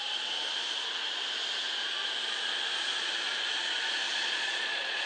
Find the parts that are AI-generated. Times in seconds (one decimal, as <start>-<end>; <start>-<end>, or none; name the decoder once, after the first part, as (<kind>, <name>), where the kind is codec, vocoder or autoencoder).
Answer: 4.2-5.1 (vocoder, Vocos)